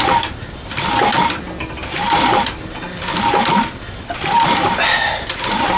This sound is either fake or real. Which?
real